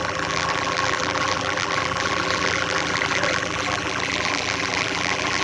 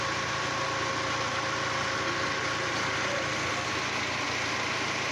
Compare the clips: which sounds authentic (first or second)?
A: second